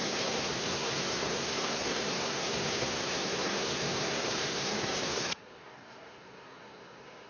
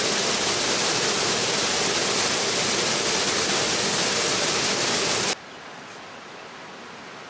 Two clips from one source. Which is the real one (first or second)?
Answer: second